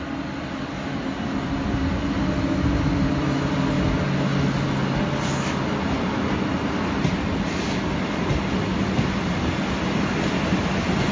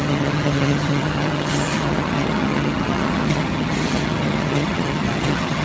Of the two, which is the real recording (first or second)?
first